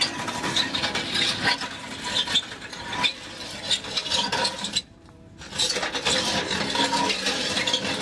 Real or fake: real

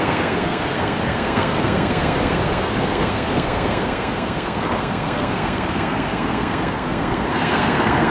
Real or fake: fake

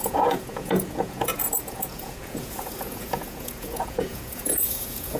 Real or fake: fake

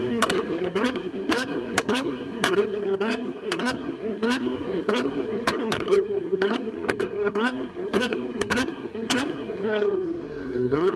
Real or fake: fake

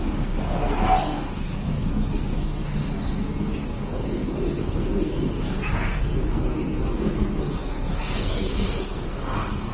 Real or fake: fake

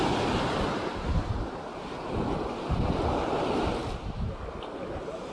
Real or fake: real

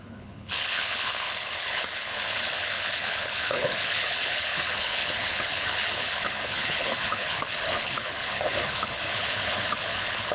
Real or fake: fake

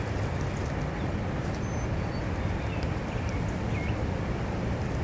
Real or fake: real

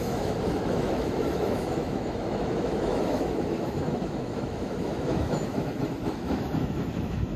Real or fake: fake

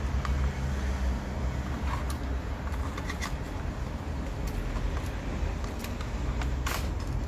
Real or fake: real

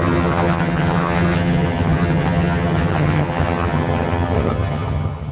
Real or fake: fake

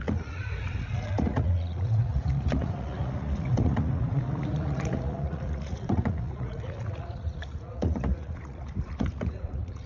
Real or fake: fake